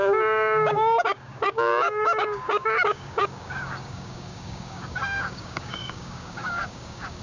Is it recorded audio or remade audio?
remade